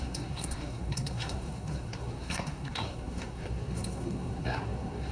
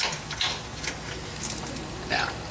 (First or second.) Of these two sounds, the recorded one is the second